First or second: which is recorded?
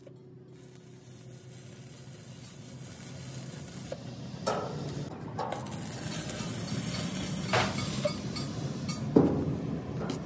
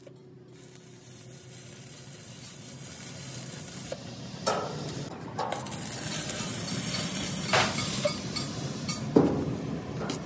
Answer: first